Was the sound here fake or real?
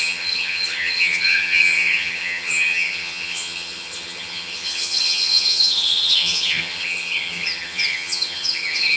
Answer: fake